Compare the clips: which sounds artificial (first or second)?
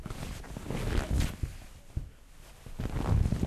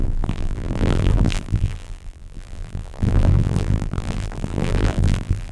second